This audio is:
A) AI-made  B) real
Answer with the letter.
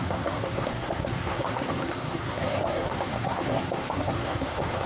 A